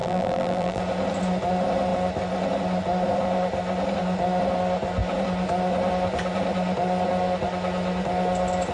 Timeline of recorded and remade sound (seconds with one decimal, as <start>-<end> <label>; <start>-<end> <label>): 0.0-0.8 remade; 0.8-8.7 recorded